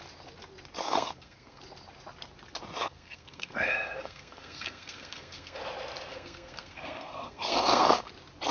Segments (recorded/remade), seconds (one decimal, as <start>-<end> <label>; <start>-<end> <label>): 0.0-0.8 recorded; 0.8-1.6 remade; 1.6-2.8 recorded; 2.8-5.6 remade; 5.6-6.1 recorded; 6.1-8.1 remade; 8.1-8.5 recorded

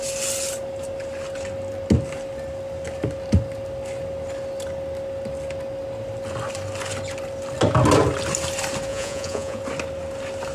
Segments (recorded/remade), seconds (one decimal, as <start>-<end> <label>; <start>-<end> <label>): 0.0-8.9 recorded; 8.9-9.6 remade; 9.6-10.5 recorded